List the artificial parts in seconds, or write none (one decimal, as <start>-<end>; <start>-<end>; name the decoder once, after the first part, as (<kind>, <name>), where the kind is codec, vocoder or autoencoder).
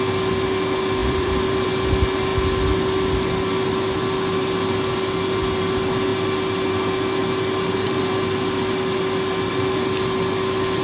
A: 1.0-1.7 (vocoder, BigVGAN v2)